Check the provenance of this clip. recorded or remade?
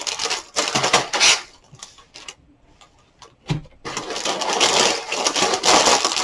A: recorded